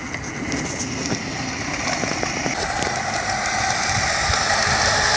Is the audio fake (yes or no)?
no